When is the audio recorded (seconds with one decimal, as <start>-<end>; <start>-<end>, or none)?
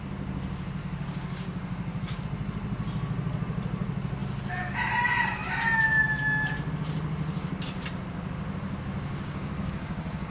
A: 0.0-0.8; 2.2-9.1